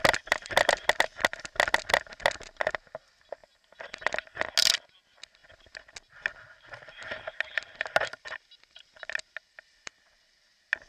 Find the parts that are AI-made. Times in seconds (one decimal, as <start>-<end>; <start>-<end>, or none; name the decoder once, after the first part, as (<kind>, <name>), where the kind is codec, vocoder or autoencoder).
none